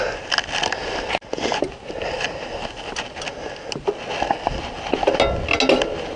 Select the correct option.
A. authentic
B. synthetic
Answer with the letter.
A